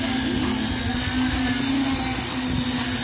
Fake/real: real